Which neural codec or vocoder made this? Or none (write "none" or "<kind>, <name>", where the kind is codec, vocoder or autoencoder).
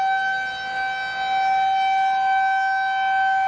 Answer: none